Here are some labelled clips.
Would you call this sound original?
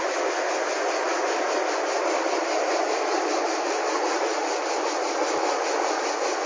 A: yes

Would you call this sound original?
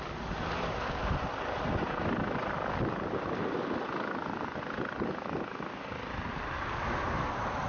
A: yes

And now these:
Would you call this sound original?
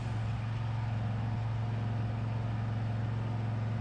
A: yes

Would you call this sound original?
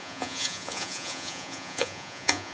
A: no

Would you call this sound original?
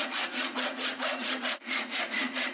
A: no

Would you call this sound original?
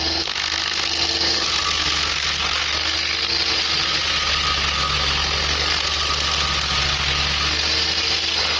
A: yes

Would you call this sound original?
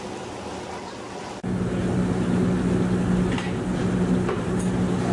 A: yes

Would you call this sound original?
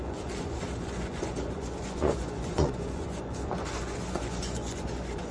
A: no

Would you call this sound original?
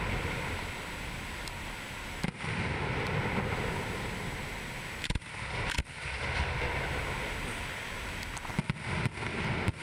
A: yes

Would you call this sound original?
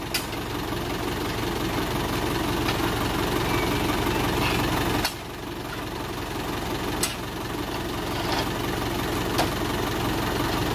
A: yes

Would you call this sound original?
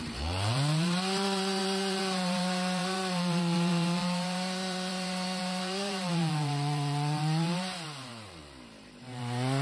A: no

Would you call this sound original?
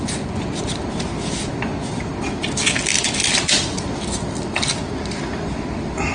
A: yes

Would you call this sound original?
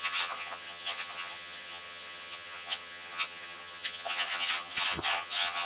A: no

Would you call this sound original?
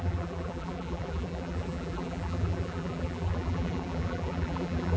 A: no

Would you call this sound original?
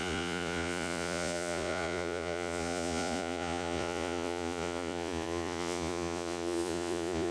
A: no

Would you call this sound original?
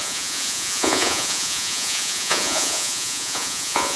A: no